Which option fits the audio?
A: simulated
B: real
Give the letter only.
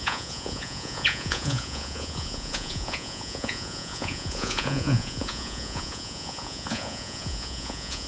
A